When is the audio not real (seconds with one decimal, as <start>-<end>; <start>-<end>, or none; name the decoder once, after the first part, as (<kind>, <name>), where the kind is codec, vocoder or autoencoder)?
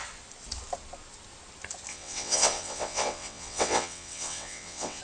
1.9-5.0 (vocoder, WaveNeXt)